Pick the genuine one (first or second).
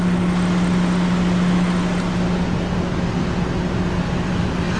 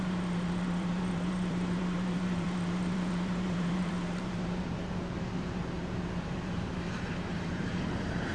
first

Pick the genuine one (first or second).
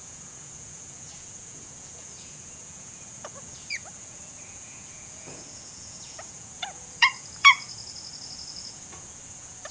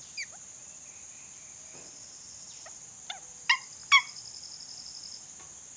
second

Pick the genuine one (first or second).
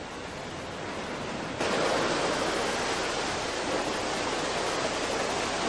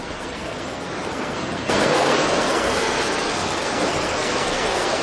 first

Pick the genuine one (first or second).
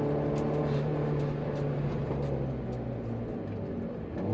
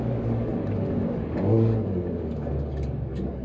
first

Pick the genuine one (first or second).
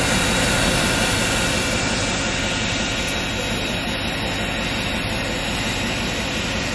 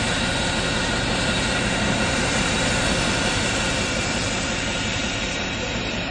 first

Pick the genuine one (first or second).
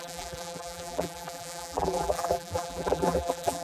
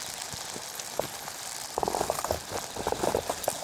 second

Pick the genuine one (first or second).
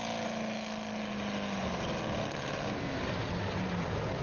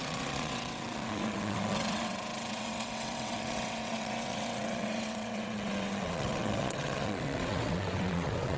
first